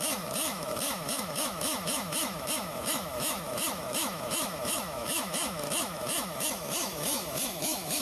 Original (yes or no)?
no